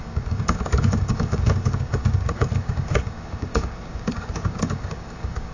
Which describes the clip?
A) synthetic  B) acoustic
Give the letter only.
A